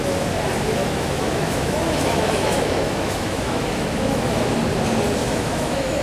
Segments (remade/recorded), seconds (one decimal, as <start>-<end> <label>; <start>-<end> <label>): 0.0-0.8 recorded; 0.8-4.4 remade; 4.4-5.2 recorded; 5.2-6.0 remade